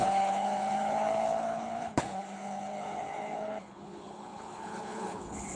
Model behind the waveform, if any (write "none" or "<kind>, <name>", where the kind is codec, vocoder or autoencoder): codec, HILCodec